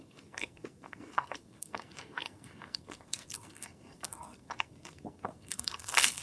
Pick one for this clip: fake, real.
fake